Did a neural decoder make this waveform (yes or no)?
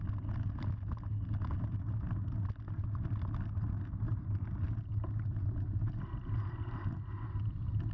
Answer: no